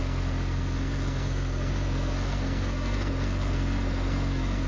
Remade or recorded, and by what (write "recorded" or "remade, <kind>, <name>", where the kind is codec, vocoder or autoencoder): remade, codec, SNAC